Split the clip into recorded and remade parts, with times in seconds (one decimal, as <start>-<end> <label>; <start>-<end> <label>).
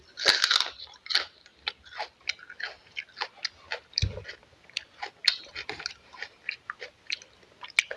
0.0-8.0 recorded